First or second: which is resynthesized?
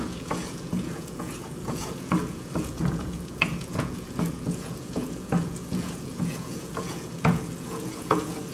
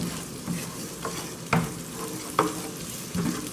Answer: first